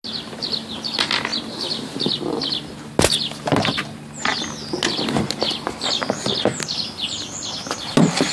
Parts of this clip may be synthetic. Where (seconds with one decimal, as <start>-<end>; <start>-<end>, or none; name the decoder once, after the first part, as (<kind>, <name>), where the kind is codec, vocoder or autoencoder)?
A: none